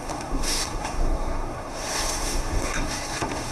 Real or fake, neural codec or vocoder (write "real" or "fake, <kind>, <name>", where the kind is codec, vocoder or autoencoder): fake, codec, SNAC